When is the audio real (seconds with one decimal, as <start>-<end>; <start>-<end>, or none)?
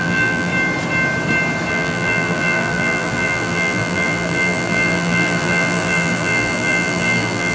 0.5-1.7